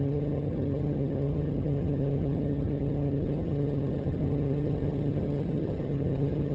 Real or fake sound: fake